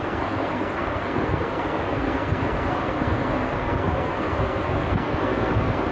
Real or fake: fake